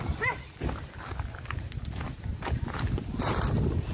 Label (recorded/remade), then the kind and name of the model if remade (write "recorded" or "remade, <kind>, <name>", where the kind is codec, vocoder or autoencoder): recorded